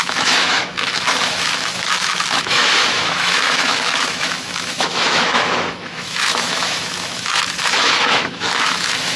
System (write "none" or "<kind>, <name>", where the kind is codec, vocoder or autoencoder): autoencoder, DAC-VAE